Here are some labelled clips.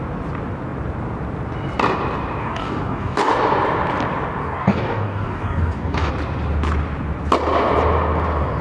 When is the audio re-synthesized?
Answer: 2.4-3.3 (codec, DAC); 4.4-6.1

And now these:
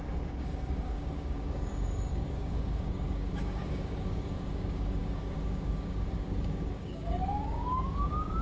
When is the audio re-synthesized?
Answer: 0.0-8.4 (codec, DAC)

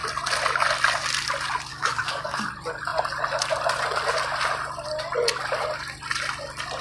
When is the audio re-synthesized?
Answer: 1.7-2.5 (codec, DAC)

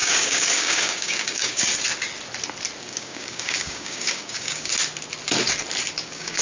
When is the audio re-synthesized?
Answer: 0.0-1.7 (codec, DAC); 2.8-4.7; 6.0-6.4